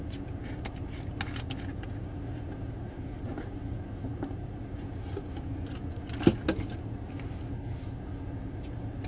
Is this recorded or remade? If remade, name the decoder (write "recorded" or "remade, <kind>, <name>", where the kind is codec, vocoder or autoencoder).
recorded